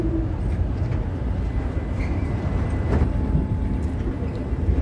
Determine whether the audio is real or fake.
real